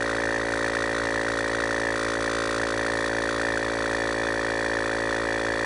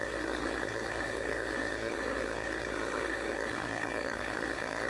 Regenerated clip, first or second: second